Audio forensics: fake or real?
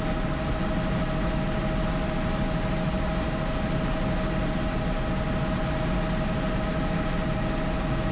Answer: real